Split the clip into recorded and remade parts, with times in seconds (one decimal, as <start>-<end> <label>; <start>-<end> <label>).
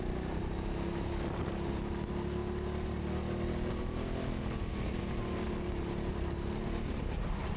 0.0-7.6 recorded